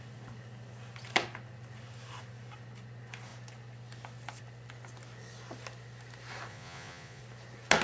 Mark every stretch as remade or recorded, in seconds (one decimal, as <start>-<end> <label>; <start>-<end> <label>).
0.0-6.5 recorded; 6.5-7.2 remade; 7.2-7.8 recorded